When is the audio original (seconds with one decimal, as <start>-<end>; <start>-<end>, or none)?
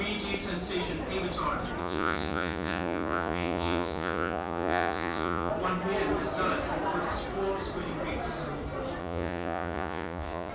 0.0-1.8; 5.5-9.0